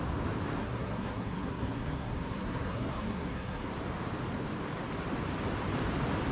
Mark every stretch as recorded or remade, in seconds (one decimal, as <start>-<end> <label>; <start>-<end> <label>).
0.0-0.6 recorded; 0.6-3.7 remade; 3.7-6.3 recorded